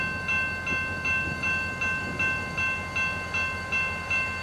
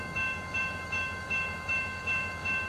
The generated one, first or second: second